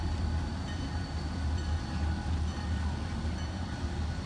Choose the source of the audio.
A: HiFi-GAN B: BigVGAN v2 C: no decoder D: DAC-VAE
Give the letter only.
C